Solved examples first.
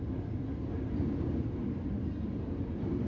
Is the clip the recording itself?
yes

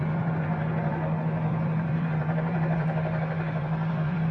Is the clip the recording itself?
no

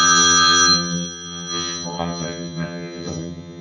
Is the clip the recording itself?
no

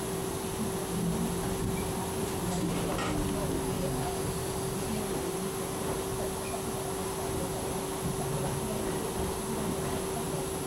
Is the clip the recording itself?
yes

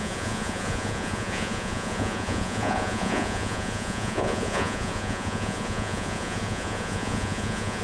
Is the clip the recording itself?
no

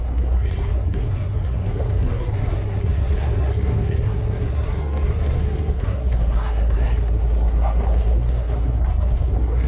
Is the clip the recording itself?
no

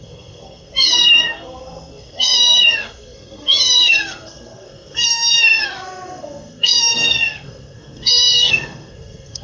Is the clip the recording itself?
no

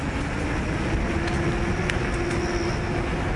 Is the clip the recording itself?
yes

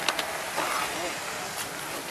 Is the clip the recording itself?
yes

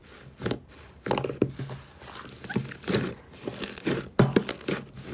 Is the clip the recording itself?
yes